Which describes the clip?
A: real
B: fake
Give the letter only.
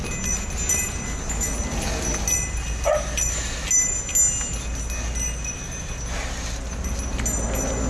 A